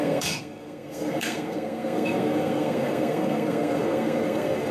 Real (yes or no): no